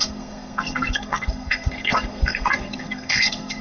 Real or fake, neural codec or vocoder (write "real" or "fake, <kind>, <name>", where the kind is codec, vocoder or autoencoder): fake, codec, SNAC